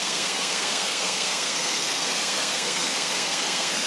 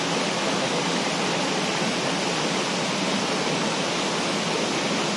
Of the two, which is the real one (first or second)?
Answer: second